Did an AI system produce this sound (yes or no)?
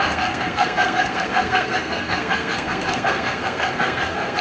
yes